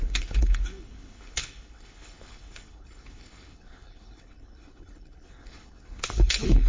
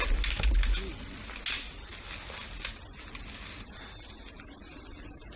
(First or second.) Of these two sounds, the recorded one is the second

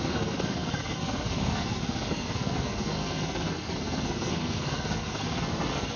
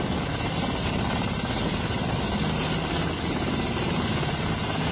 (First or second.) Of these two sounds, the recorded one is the second